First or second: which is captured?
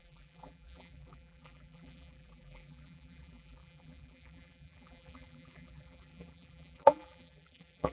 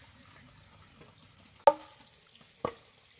second